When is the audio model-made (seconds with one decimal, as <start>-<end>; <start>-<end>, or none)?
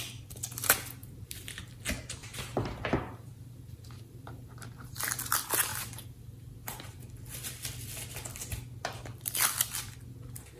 1.0-1.6; 2.2-5.0; 5.7-7.0